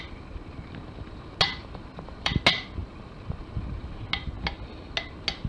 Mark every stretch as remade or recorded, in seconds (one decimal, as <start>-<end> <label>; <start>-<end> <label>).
0.0-1.6 recorded; 1.6-2.4 remade; 2.4-2.8 recorded; 2.8-3.4 remade; 3.4-5.5 recorded